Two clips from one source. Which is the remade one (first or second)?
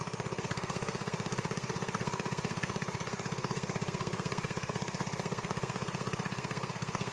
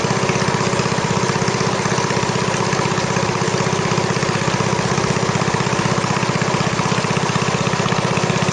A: first